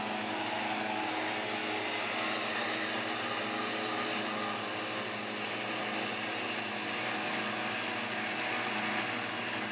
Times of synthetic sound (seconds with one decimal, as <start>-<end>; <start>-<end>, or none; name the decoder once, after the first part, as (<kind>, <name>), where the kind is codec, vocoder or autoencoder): none